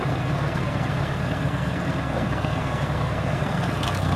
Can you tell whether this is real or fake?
fake